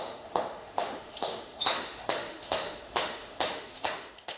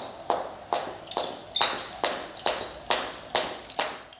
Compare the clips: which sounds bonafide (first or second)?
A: second